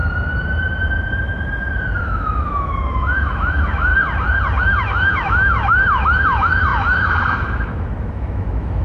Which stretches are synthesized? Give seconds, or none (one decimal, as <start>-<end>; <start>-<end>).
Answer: 2.0-3.9; 4.6-8.8